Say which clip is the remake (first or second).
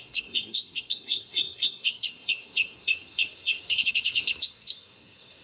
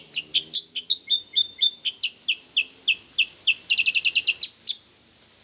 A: first